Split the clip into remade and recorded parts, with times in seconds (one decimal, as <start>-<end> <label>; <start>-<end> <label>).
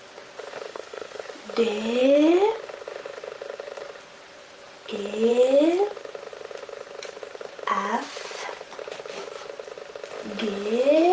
0.0-0.7 recorded; 0.7-1.2 remade; 1.2-11.1 recorded